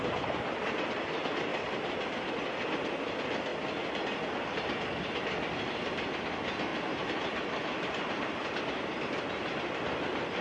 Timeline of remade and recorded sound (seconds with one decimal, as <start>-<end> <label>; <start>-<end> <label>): 0.0-6.7 recorded; 6.7-10.4 remade